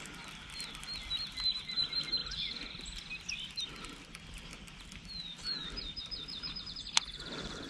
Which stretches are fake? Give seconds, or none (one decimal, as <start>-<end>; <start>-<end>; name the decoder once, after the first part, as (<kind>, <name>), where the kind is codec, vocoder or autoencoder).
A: none